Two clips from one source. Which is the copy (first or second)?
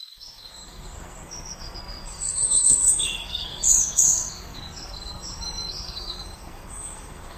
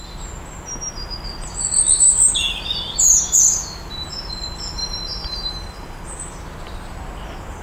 first